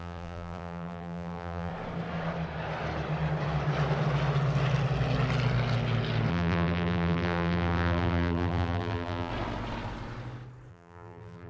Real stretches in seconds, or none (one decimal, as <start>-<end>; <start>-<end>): 1.7-6.3; 9.3-10.7